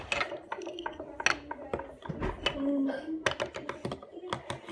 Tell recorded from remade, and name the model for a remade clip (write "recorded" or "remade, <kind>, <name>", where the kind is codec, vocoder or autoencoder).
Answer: recorded